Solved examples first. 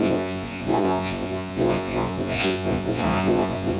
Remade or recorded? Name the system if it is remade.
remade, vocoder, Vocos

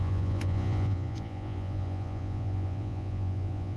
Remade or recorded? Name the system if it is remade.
remade, vocoder, Vocos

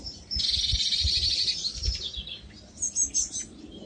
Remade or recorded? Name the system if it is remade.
recorded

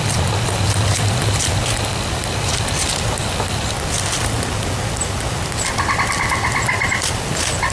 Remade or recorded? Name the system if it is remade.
recorded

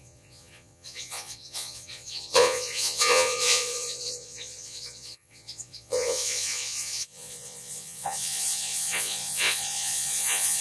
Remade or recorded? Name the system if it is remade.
remade, vocoder, Vocos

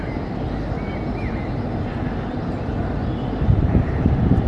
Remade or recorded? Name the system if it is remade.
recorded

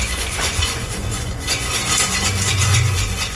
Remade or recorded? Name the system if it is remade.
remade, vocoder, Vocos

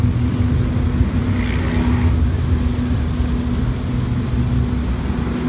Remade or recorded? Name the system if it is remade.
recorded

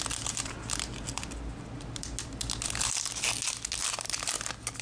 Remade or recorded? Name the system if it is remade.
recorded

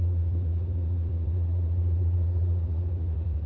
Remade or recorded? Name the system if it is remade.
remade, vocoder, Vocos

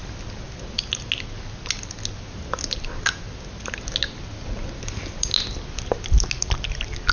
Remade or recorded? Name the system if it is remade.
recorded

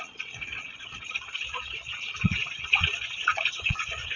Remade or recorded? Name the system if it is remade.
remade, vocoder, Vocos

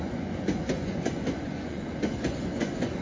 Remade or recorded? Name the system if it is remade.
remade, vocoder, Vocos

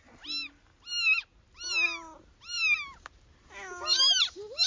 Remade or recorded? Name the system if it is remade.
recorded